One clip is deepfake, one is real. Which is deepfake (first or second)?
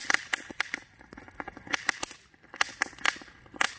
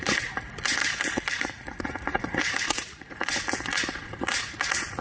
second